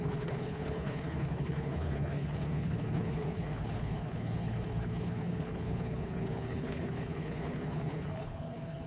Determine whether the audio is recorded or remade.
remade